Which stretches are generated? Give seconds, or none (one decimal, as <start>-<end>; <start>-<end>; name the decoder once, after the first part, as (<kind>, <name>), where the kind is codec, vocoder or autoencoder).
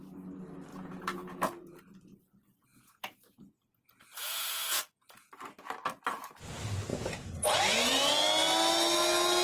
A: 0.7-1.8 (vocoder, Vocos); 2.7-5.3; 6.9-8.1